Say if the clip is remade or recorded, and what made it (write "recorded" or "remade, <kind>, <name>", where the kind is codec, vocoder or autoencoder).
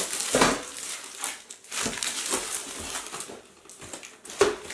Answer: recorded